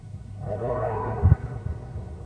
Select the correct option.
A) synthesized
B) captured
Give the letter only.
A